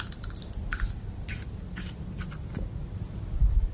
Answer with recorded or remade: recorded